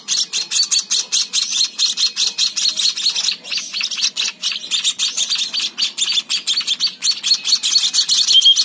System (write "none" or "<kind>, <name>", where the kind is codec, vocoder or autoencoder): none